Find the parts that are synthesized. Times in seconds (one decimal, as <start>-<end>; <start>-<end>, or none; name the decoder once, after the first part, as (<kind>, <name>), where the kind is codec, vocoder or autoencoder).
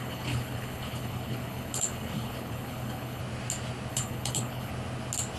0.0-3.2 (codec, HILCodec); 3.9-4.7